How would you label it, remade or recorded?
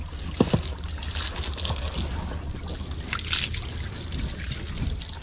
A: recorded